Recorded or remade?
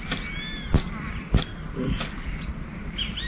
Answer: recorded